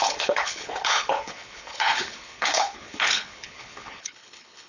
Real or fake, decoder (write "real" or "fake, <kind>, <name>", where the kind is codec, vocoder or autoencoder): fake, codec, HILCodec